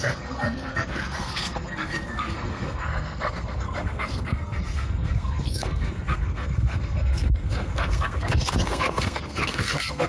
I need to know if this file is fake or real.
fake